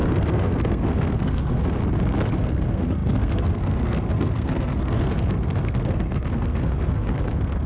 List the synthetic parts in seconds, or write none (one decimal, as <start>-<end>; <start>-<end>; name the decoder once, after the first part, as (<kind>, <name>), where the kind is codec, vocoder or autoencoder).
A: 0.0-1.8 (codec, SNAC); 2.3-7.7